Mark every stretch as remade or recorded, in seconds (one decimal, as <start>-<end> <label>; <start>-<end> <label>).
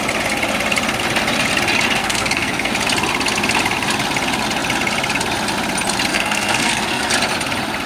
0.0-2.0 recorded; 2.0-2.7 remade; 2.7-6.1 recorded; 6.1-7.1 remade; 7.1-7.9 recorded